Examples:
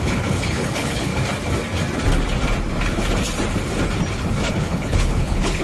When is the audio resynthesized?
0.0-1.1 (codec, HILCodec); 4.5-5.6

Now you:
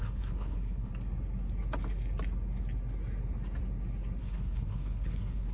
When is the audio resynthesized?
0.0-0.9 (codec, HILCodec); 4.2-5.5

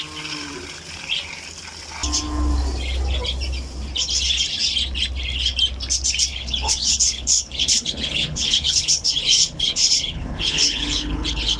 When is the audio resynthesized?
6.3-11.6 (codec, HILCodec)

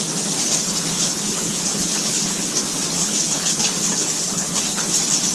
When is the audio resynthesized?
0.4-2.4 (codec, HILCodec); 3.0-4.6

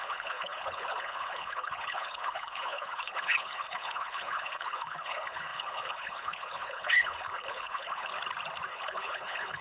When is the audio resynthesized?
0.0-8.1 (codec, HILCodec); 8.7-9.6

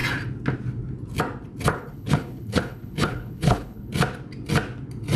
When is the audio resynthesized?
1.7-3.9 (codec, HILCodec)

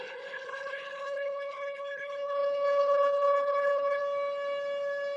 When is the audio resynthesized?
0.0-4.0 (codec, HILCodec)

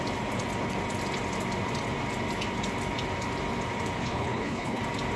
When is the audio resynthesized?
4.0-4.8 (codec, HILCodec)